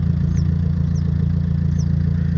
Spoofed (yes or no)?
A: no